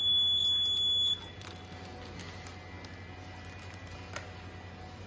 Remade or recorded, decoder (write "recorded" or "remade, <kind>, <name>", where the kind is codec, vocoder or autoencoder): recorded